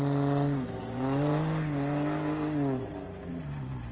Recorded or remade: recorded